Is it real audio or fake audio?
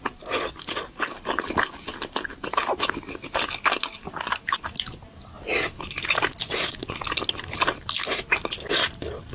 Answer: real